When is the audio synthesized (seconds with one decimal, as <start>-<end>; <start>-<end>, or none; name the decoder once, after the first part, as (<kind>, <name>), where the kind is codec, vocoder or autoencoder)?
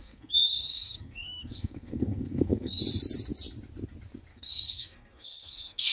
0.0-2.8 (codec, SNAC); 4.3-5.9